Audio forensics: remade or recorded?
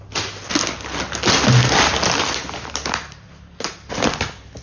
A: recorded